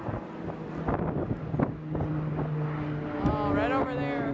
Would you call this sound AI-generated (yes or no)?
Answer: no